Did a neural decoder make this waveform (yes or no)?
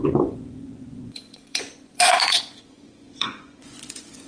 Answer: yes